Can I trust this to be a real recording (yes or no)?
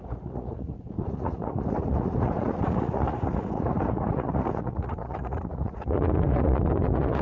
no